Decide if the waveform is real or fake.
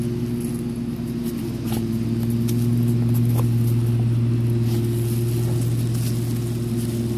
real